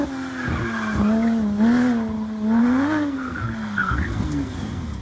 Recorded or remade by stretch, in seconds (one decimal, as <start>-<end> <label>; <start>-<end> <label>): 0.0-2.6 recorded; 2.6-5.0 remade